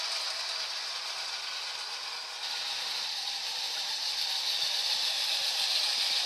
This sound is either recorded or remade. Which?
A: recorded